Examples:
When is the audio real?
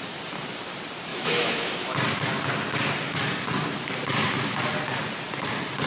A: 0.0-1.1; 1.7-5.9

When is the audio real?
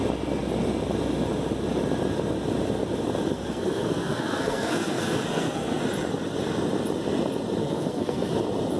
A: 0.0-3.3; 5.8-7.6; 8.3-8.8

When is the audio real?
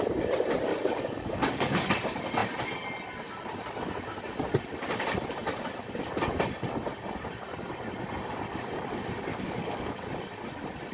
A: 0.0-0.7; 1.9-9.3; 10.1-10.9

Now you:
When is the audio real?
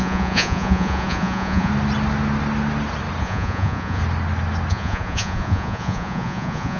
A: 1.7-3.2; 4.0-4.7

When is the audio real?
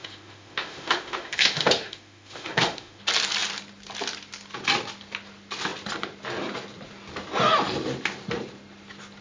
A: 3.0-9.2